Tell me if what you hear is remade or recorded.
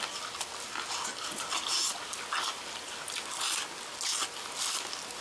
recorded